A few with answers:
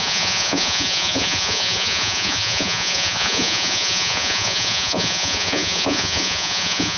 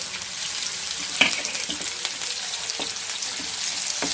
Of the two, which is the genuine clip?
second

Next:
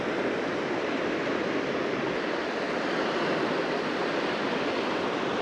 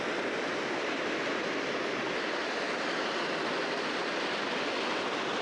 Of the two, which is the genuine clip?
second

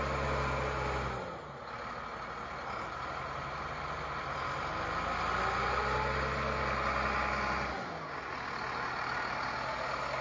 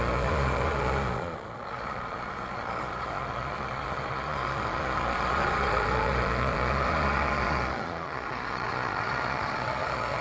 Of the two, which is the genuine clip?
first